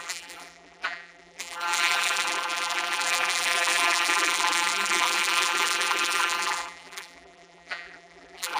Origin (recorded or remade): remade